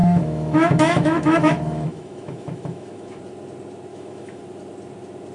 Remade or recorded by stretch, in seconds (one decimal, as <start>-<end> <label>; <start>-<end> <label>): 0.0-3.2 remade; 3.2-3.9 recorded; 3.9-4.4 remade; 4.4-5.3 recorded